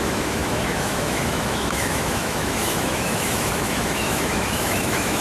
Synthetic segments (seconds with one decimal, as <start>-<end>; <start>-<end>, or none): 0.0-5.2